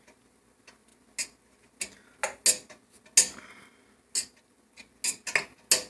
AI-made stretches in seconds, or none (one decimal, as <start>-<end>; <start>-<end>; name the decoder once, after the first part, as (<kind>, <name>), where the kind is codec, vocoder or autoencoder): none